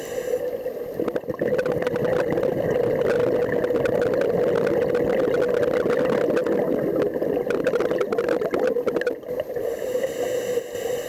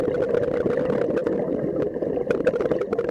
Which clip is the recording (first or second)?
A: first